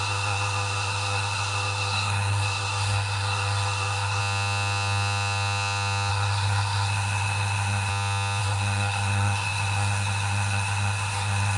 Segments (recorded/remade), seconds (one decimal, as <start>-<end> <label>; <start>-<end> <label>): 0.0-4.2 remade; 4.2-6.1 recorded; 6.1-7.9 remade; 7.9-8.4 recorded; 8.4-11.6 remade